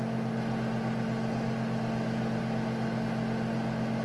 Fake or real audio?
real